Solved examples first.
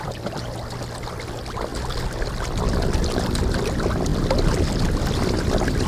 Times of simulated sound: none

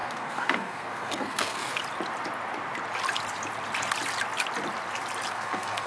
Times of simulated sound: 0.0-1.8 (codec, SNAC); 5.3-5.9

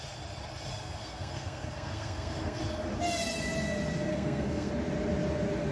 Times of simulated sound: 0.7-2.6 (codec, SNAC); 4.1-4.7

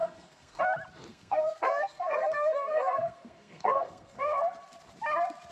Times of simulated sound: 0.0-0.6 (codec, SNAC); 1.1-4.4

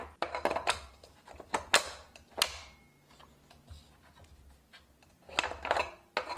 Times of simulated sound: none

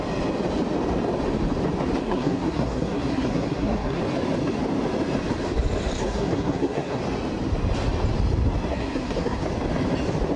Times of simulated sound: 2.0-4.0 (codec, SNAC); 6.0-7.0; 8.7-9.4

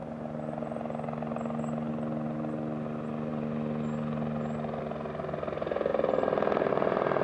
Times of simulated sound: none

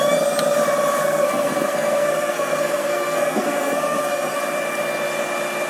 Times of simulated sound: 1.0-4.4 (codec, SNAC)